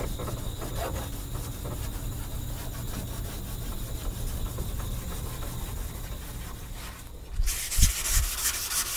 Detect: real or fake real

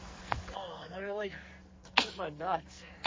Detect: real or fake fake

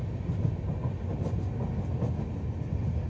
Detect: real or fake real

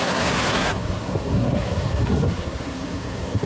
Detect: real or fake fake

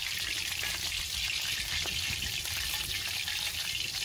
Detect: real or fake real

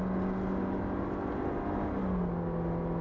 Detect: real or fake real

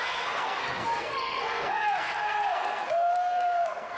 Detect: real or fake fake